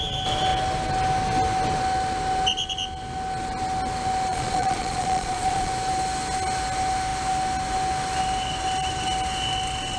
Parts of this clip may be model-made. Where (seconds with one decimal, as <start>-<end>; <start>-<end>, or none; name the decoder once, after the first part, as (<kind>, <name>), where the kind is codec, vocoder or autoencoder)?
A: 4.3-5.7 (vocoder, Vocos)